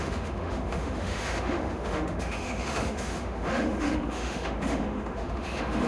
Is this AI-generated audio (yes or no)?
yes